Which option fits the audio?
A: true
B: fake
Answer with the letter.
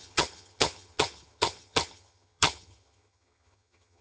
B